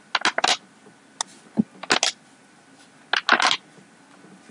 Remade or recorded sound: recorded